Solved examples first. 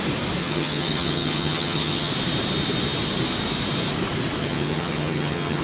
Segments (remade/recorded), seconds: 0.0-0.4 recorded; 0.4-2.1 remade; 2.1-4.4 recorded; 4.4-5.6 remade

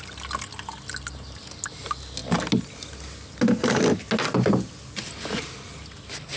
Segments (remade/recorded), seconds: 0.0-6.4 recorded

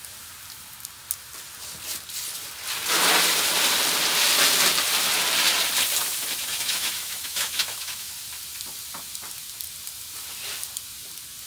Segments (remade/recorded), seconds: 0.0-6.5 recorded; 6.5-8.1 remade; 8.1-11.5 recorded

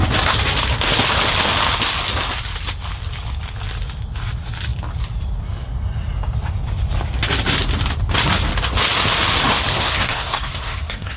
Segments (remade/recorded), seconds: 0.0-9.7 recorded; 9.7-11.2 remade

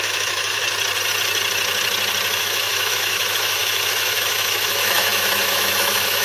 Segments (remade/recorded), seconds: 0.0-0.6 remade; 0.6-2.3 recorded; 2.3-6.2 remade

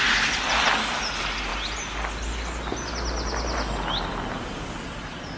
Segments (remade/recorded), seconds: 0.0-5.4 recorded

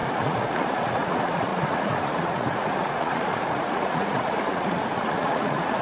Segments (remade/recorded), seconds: 0.0-5.8 remade

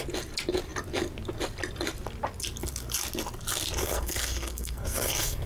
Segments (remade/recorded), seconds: 0.0-3.8 recorded; 3.8-5.5 remade